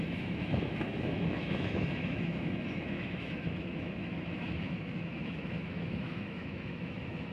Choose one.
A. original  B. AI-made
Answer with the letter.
B